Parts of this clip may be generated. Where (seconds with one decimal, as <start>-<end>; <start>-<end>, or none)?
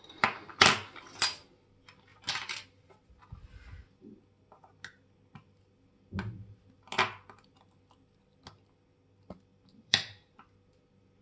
2.1-3.1; 9.5-10.4